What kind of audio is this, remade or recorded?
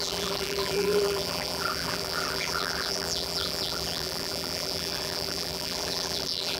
remade